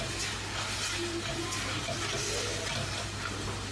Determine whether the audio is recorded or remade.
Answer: recorded